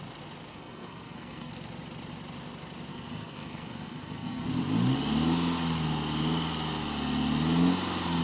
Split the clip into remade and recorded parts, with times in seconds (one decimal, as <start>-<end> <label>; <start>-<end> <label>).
0.0-0.5 recorded; 0.5-1.5 remade; 1.5-2.9 recorded; 2.9-4.5 remade; 4.5-8.2 recorded